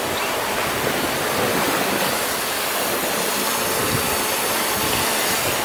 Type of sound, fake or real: real